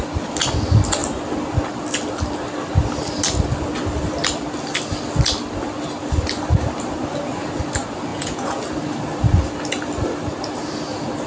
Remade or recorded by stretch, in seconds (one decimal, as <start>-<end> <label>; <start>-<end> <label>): 0.0-8.1 recorded; 8.1-8.6 remade; 8.6-11.3 recorded